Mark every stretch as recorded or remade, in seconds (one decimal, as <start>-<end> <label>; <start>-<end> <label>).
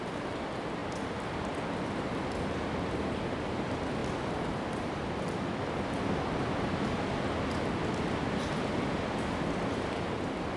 0.0-10.6 recorded